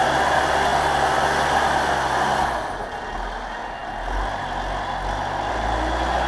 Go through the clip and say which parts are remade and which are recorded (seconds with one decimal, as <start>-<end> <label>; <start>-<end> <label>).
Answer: 0.0-6.3 recorded